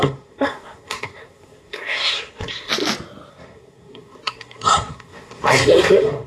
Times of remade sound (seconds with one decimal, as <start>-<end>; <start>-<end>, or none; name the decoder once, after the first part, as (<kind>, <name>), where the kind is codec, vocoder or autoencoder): 0.0-2.7 (codec, SNAC); 3.3-6.3